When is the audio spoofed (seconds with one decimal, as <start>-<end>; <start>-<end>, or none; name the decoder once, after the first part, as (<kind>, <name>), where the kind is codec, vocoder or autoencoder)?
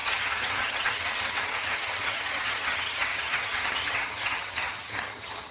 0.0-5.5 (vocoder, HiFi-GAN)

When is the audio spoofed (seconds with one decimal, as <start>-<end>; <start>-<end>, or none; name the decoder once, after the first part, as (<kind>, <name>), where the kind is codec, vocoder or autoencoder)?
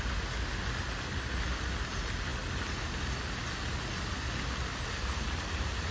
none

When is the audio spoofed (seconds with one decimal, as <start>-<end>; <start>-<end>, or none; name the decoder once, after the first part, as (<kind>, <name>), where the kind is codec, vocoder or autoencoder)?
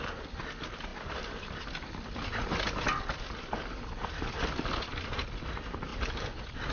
none